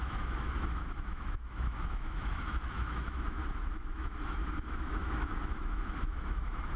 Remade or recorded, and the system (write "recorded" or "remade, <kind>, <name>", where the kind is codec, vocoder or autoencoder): remade, autoencoder, DAC-VAE